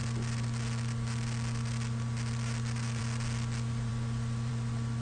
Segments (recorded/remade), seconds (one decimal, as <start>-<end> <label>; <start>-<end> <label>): 0.0-5.0 recorded